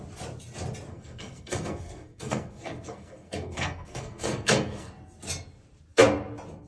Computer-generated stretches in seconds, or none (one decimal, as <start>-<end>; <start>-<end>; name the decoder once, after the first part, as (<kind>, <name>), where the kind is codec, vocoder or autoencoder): 0.9-4.9 (codec, SNAC)